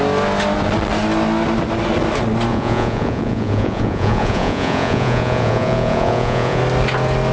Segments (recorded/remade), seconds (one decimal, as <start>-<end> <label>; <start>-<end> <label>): 0.0-2.5 recorded; 2.5-6.6 remade; 6.6-7.3 recorded